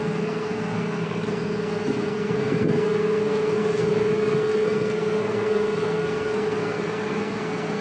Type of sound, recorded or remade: remade